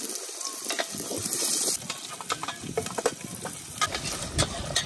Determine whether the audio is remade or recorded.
recorded